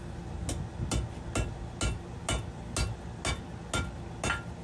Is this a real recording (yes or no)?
yes